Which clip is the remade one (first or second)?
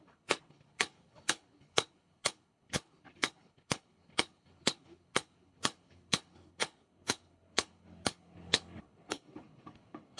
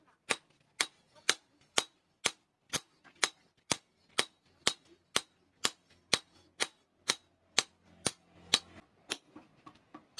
first